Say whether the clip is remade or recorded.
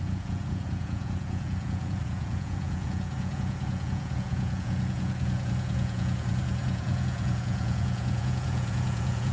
remade